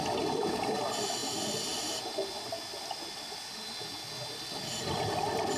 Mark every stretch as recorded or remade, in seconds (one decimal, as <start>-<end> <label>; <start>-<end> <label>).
0.0-5.6 recorded